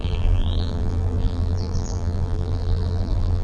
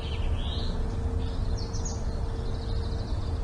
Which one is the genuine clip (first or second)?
second